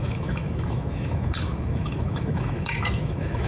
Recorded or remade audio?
remade